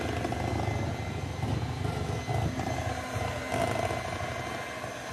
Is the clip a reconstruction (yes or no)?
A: no